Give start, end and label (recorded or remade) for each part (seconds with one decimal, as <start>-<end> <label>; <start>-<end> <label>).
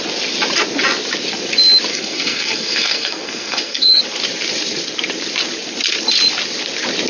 0.0-1.9 recorded; 1.9-4.0 remade; 4.0-7.1 recorded